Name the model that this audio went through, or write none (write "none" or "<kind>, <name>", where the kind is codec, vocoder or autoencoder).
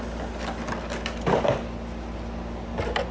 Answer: none